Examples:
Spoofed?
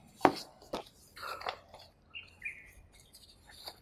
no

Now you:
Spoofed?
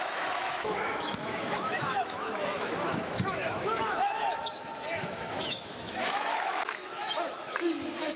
yes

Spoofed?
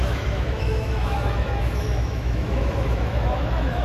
yes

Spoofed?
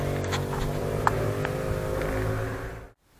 no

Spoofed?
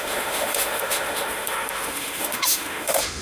yes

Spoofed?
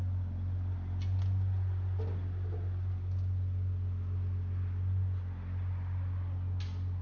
no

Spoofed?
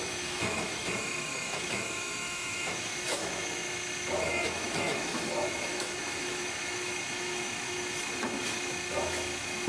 yes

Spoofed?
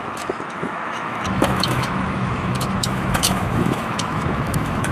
yes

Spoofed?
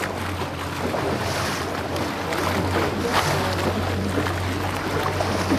no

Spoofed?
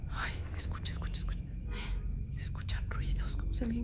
yes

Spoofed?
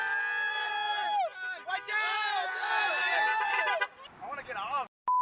no